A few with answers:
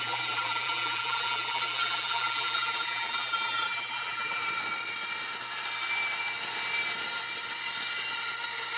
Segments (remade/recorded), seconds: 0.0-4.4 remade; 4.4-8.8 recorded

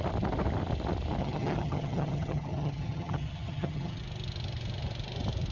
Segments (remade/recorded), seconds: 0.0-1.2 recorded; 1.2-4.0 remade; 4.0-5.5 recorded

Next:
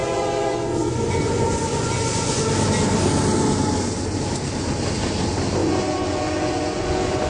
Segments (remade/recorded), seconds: 0.0-2.4 remade; 2.4-5.6 recorded; 5.6-7.3 remade

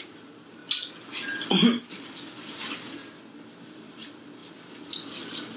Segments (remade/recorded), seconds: 0.0-0.6 remade; 0.6-2.1 recorded; 2.1-3.0 remade; 3.0-3.6 recorded; 3.6-4.4 remade; 4.4-5.1 recorded; 5.1-5.6 remade

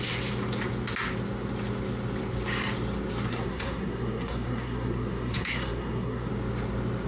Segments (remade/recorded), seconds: 0.0-3.3 recorded; 3.3-6.3 remade; 6.3-7.1 recorded

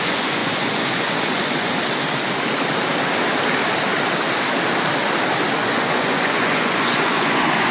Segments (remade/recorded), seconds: 0.0-1.7 remade; 1.7-5.6 recorded; 5.6-7.7 remade

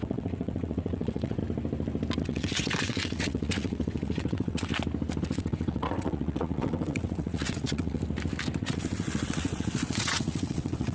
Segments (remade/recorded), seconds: 0.0-1.4 remade; 1.4-2.2 recorded; 2.2-4.7 remade; 4.7-5.2 recorded; 5.2-8.0 remade; 8.0-8.6 recorded; 8.6-10.9 remade